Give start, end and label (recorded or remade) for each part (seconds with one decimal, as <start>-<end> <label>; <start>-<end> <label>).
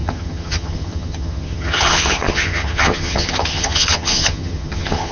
0.0-5.1 remade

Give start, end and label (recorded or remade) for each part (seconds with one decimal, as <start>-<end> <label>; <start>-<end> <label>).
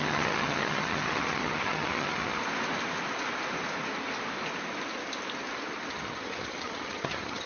0.0-2.4 remade; 2.4-5.9 recorded; 5.9-7.5 remade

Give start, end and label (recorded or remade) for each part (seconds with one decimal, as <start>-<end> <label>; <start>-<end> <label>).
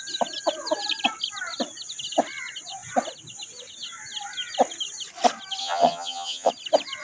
0.0-5.6 recorded; 5.6-6.5 remade; 6.5-7.0 recorded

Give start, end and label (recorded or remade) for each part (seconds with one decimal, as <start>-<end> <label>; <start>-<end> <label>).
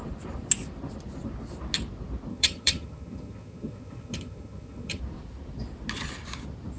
0.0-2.3 recorded; 2.3-5.0 remade; 5.0-6.8 recorded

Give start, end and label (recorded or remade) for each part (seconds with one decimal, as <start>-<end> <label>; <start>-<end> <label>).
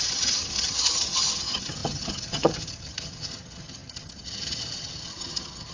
0.0-5.7 remade